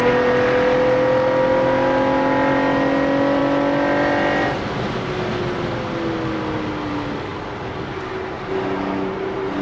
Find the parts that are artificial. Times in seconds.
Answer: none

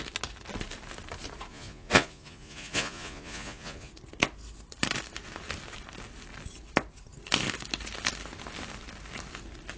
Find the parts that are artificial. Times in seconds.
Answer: 1.5-3.9 (vocoder, Vocos)

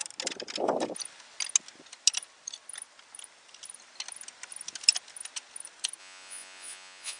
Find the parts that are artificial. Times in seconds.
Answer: 6.0-7.2 (vocoder, Vocos)

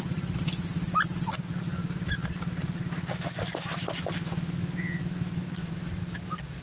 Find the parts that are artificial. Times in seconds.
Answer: 5.0-5.7 (autoencoder, DAC-VAE)

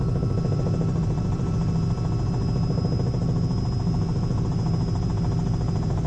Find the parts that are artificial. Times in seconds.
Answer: none